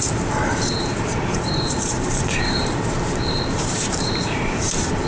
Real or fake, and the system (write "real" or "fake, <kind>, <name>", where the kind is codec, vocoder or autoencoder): fake, vocoder, BigVGAN v2